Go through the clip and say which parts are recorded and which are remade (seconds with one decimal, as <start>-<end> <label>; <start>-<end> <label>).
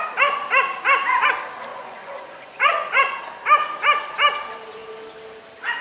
0.0-1.7 recorded; 1.7-3.2 remade; 3.2-5.8 recorded